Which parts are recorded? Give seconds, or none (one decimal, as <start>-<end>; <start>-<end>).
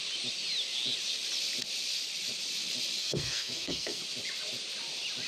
0.0-3.0; 4.0-5.3